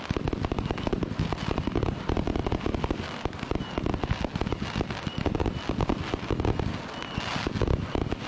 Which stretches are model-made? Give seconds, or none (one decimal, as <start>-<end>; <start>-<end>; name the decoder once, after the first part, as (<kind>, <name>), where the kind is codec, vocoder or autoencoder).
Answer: none